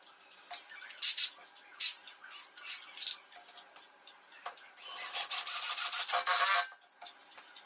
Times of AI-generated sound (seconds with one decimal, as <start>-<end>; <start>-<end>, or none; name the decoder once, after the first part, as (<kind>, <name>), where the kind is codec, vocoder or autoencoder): none